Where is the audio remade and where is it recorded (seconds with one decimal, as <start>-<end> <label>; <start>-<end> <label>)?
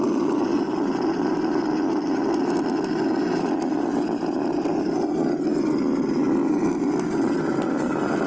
0.0-8.3 recorded